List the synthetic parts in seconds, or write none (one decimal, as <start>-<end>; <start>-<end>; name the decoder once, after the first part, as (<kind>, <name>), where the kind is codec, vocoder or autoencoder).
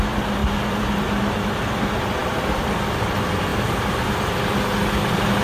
2.2-2.7 (vocoder, BigVGAN v2); 3.5-4.1